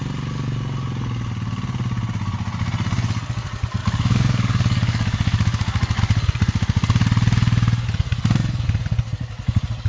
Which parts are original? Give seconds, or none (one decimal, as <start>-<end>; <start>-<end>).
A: 0.0-3.8; 6.0-9.9